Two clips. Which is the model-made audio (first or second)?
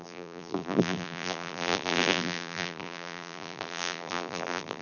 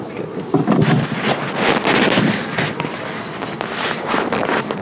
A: first